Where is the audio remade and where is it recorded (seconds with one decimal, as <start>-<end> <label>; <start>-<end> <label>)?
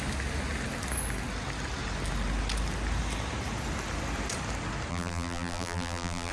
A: 0.0-4.9 recorded; 4.9-6.3 remade